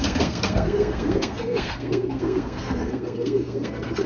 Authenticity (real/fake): fake